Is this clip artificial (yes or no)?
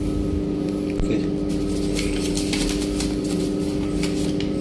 no